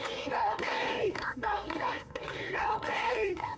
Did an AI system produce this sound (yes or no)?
yes